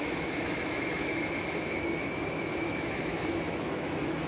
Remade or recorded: remade